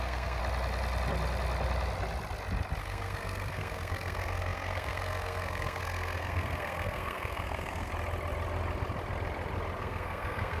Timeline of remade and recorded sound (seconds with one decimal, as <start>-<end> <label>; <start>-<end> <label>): 0.0-0.4 remade; 0.4-2.8 recorded; 2.8-7.9 remade; 7.9-9.8 recorded; 9.8-10.6 remade